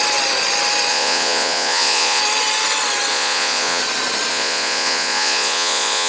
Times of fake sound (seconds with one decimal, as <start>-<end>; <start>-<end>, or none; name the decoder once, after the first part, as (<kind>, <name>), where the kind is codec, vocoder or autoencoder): 0.9-2.2 (vocoder, Vocos); 3.1-3.8; 4.3-6.1